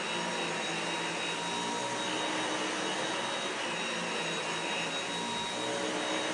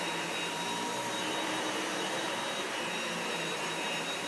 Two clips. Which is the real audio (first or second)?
first